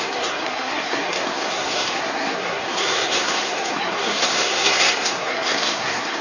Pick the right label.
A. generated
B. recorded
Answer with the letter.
A